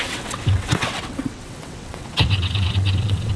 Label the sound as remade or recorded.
remade